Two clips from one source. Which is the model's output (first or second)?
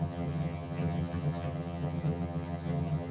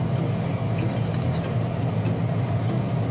first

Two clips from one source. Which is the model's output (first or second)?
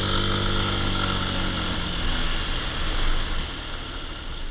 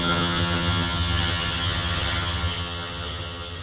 second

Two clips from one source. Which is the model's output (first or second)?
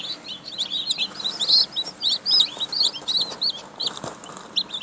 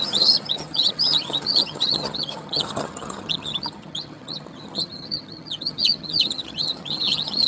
second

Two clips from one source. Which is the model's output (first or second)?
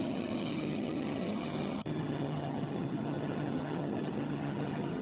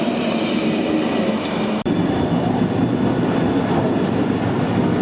first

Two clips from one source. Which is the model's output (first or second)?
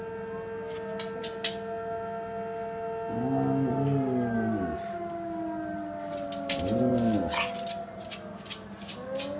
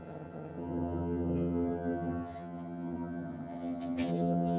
second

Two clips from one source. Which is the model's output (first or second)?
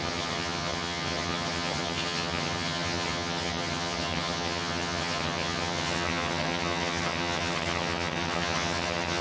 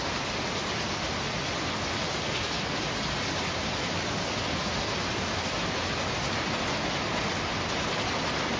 first